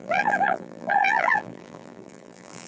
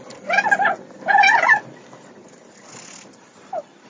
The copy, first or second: first